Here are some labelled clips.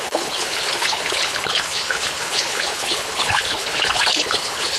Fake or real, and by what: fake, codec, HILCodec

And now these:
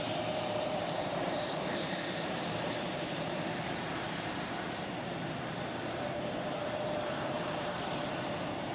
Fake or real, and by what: fake, vocoder, BigVGAN v2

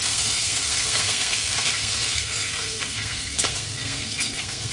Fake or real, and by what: fake, codec, SNAC